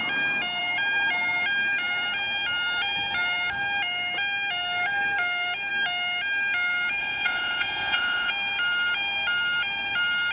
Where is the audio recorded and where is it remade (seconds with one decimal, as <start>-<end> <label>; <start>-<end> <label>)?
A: 0.0-7.0 recorded; 7.0-8.3 remade; 8.3-10.3 recorded